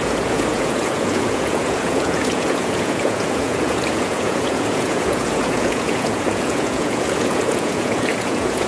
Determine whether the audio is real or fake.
fake